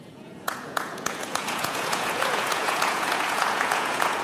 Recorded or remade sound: remade